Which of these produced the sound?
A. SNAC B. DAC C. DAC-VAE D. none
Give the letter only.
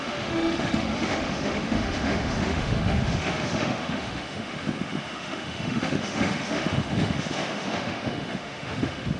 C